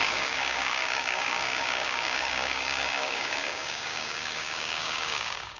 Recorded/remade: remade